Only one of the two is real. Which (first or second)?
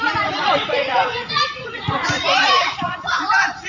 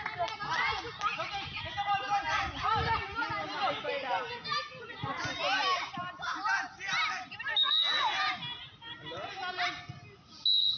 second